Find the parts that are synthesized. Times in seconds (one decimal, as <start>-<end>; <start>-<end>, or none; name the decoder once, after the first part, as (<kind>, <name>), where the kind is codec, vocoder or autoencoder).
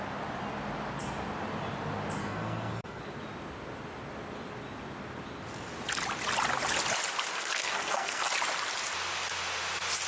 2.2-3.0 (codec, SNAC); 7.3-8.3